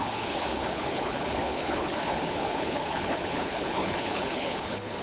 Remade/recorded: remade